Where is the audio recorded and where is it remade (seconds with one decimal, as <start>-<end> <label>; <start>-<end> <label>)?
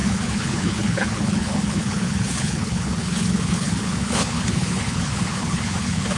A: 0.0-6.2 remade